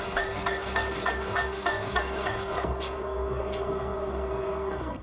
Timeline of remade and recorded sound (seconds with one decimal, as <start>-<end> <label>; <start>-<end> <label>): 0.0-5.0 remade